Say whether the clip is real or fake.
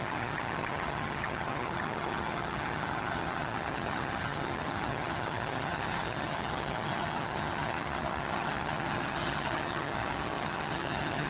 fake